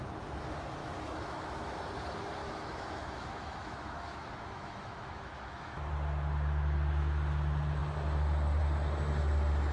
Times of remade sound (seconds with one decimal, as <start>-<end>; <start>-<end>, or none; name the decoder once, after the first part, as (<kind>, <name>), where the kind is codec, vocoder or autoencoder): 0.8-1.8 (autoencoder, DAC-VAE); 2.4-5.9